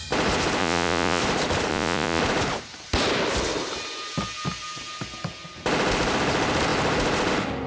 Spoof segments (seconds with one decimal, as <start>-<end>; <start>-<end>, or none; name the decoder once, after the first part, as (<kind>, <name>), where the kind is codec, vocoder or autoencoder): 0.6-1.2 (vocoder, Vocos); 1.7-2.2